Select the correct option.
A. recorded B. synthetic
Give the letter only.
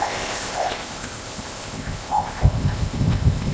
B